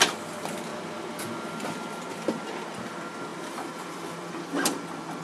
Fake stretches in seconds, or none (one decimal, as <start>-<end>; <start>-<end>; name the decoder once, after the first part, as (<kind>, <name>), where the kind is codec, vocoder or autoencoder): 3.3-5.2 (vocoder, BigVGAN v2)